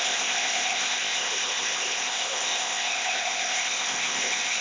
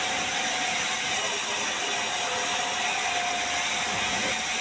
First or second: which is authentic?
second